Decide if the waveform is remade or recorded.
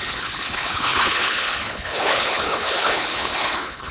remade